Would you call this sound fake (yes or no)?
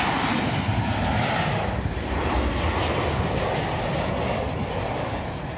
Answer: no